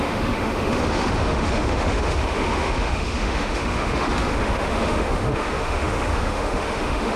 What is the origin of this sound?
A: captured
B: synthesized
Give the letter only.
B